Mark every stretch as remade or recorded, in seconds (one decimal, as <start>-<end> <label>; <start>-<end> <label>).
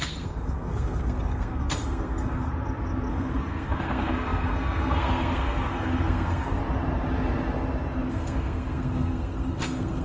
0.0-2.5 remade; 2.5-3.1 recorded; 3.1-6.6 remade; 6.6-8.1 recorded; 8.1-10.0 remade